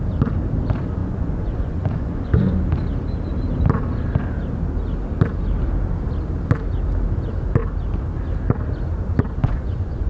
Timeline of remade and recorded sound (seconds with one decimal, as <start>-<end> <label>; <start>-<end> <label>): 0.0-1.0 recorded; 1.0-2.5 remade; 2.5-9.4 recorded; 9.4-10.1 remade